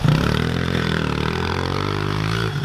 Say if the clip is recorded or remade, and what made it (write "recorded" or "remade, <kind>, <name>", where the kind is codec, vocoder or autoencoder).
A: remade, vocoder, BigVGAN v2